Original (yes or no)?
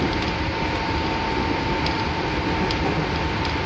yes